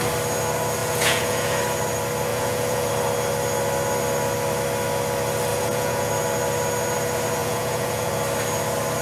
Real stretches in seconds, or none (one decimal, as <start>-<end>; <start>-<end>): 0.0-0.8; 1.6-2.3; 2.9-5.5; 6.1-7.4; 8.1-9.0